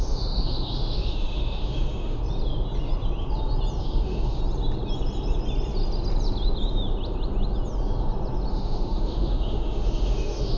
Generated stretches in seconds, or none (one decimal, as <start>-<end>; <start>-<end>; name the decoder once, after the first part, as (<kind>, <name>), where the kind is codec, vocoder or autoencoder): 0.0-2.2 (autoencoder, DAC-VAE); 3.8-4.4; 8.5-10.6